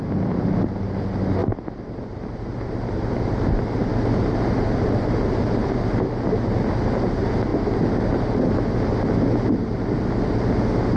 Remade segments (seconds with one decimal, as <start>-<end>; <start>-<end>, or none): 1.4-6.0